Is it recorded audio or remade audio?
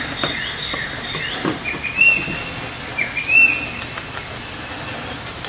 recorded